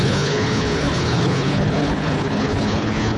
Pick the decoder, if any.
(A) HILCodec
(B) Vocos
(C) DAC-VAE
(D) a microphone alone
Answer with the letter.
A